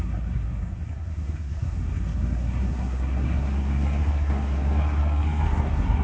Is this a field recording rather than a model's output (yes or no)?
no